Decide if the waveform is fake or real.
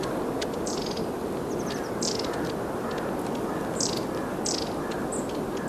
real